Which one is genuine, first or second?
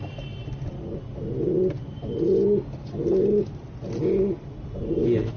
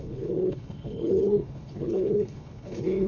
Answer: first